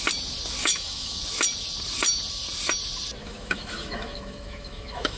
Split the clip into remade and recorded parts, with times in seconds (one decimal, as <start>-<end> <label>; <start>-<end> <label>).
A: 0.0-0.6 recorded; 0.6-1.2 remade; 1.2-3.2 recorded; 3.2-5.2 remade